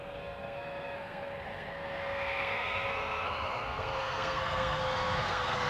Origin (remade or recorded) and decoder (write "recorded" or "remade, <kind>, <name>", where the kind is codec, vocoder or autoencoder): remade, codec, SNAC